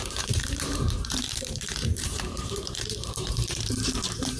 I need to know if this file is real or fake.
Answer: fake